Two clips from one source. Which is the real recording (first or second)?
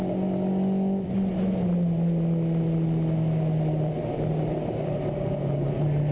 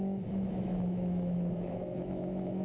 first